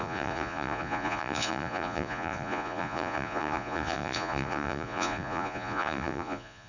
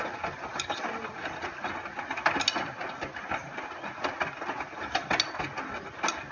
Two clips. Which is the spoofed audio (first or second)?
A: first